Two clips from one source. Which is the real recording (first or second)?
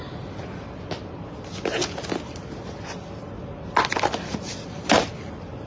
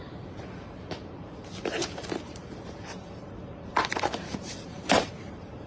first